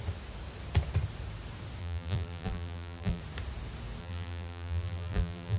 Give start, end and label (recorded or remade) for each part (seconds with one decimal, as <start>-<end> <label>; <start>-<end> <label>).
0.0-1.8 recorded; 1.8-3.2 remade; 3.2-4.0 recorded; 4.0-5.6 remade